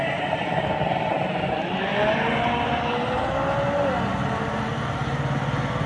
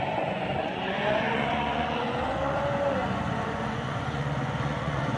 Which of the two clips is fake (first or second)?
second